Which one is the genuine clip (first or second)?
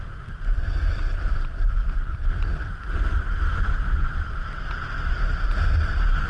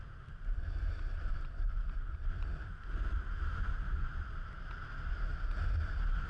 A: second